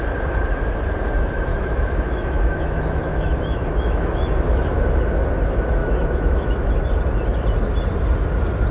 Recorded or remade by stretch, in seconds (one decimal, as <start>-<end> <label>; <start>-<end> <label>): 0.0-1.5 recorded; 1.5-4.8 remade; 4.8-5.8 recorded; 5.8-6.7 remade; 6.7-8.7 recorded